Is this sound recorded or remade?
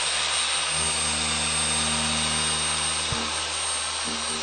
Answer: recorded